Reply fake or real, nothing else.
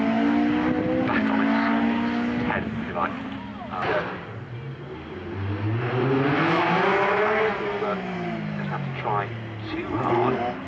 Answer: real